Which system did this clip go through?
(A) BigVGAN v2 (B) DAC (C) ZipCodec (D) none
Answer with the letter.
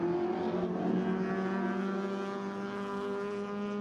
D